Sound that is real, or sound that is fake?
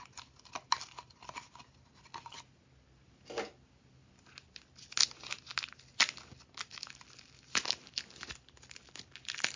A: real